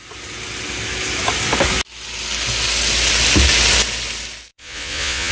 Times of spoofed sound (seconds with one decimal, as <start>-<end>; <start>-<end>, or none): 4.5-5.3